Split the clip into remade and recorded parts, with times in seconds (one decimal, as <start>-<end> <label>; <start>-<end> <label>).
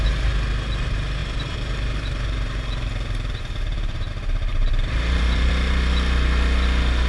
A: 0.0-1.2 recorded; 1.2-4.1 remade; 4.1-4.5 recorded; 4.5-5.5 remade; 5.5-7.1 recorded